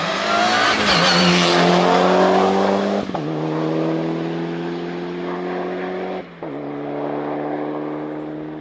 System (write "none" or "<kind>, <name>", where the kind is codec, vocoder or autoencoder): none